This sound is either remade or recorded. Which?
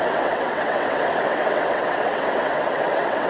remade